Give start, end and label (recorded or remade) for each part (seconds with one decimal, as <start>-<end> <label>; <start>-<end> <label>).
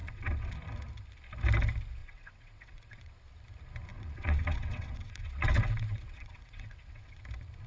0.0-0.5 remade; 0.5-2.0 recorded; 2.0-3.1 remade; 3.1-3.9 recorded; 3.9-7.2 remade; 7.2-7.7 recorded